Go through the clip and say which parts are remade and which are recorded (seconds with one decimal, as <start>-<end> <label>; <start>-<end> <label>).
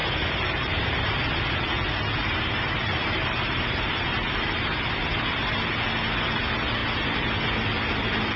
0.0-1.4 remade; 1.4-2.2 recorded; 2.2-5.6 remade; 5.6-6.8 recorded; 6.8-7.3 remade; 7.3-8.4 recorded